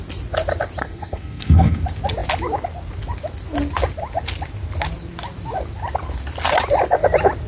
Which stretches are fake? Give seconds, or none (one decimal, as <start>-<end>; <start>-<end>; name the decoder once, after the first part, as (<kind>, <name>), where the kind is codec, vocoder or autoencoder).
0.8-1.8 (codec, SNAC)